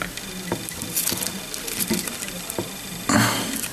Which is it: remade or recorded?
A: recorded